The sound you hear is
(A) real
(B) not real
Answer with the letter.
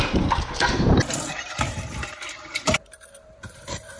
B